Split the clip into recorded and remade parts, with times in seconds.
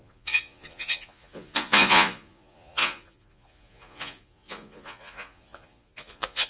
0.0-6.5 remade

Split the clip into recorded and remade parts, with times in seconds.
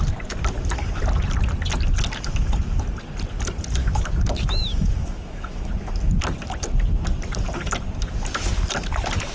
0.0-3.8 recorded; 3.8-5.7 remade; 5.7-9.3 recorded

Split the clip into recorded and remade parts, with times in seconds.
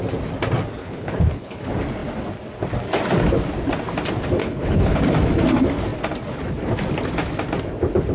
0.0-0.8 recorded; 0.8-1.6 remade; 1.6-4.4 recorded; 4.4-5.0 remade; 5.0-8.1 recorded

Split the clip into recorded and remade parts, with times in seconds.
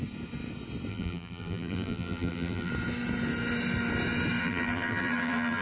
0.0-0.9 recorded; 0.9-2.7 remade; 2.7-4.4 recorded; 4.4-5.6 remade